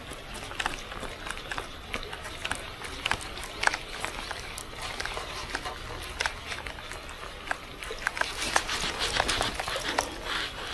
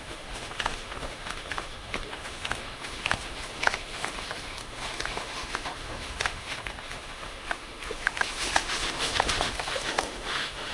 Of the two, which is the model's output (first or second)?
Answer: second